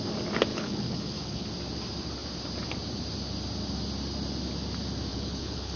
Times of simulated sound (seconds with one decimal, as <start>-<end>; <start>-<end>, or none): 0.5-1.5; 5.1-5.8